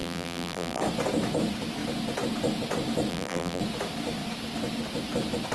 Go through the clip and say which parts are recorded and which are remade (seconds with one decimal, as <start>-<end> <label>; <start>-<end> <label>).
0.0-0.8 remade; 0.8-3.1 recorded; 3.1-3.6 remade; 3.6-5.5 recorded